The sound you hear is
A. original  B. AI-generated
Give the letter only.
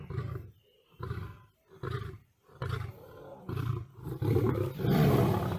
A